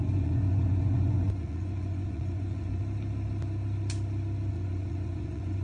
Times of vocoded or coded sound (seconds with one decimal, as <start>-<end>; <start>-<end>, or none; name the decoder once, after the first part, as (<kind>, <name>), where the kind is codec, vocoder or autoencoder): 0.0-2.8 (vocoder, Vocos); 4.5-5.6

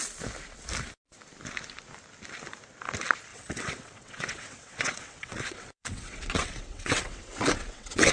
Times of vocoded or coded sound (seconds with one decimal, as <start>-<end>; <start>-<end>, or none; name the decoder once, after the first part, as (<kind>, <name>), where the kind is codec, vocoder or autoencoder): 3.3-8.1 (vocoder, WaveNeXt)

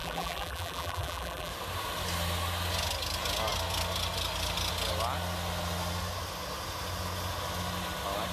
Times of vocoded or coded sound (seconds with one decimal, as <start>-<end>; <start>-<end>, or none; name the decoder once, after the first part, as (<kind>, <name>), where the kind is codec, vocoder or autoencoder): 0.0-1.5 (vocoder, BigVGAN v2)

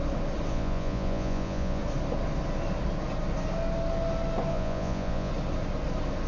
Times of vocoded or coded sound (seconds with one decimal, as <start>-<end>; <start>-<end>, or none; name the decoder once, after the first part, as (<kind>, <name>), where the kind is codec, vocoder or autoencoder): 0.5-1.8 (vocoder, Vocos); 4.5-5.3

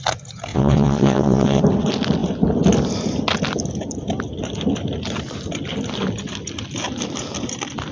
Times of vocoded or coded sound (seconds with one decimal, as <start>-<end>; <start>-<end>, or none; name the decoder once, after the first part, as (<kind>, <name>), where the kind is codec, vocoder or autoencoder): 0.5-1.6 (vocoder, WaveNeXt)

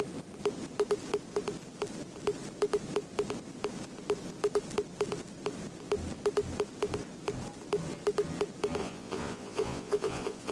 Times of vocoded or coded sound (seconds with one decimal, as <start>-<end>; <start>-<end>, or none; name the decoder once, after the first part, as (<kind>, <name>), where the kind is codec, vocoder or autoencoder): 8.8-10.5 (vocoder, Vocos)

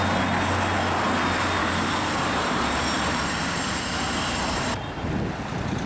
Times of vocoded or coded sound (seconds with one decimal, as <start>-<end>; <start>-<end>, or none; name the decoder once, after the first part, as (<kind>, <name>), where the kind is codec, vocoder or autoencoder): 1.6-5.1 (vocoder, BigVGAN v2)

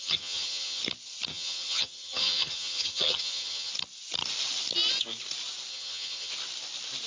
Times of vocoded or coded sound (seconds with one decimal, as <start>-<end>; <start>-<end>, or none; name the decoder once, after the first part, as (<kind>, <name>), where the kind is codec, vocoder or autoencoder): 0.0-0.8 (vocoder, HiFi-GAN); 1.3-3.7; 5.7-6.3